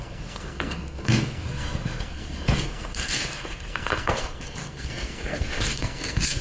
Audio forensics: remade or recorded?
remade